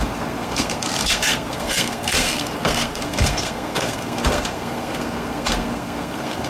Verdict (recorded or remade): remade